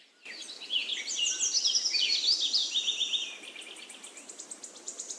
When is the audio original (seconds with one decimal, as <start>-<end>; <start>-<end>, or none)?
0.0-5.2